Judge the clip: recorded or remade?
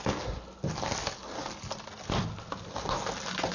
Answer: recorded